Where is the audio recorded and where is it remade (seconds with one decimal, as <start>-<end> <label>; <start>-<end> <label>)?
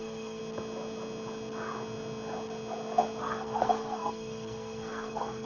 0.0-0.4 remade; 0.4-3.2 recorded; 3.2-5.5 remade